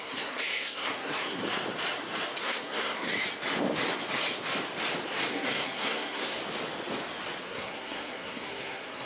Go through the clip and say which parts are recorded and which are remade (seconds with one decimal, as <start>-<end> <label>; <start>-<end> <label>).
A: 0.0-1.4 remade; 1.4-2.4 recorded; 2.4-3.1 remade; 3.1-5.3 recorded; 5.3-6.4 remade; 6.4-7.4 recorded; 7.4-9.1 remade